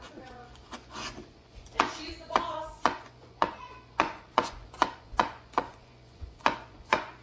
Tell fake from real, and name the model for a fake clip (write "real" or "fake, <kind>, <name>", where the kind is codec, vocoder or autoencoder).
fake, vocoder, Vocos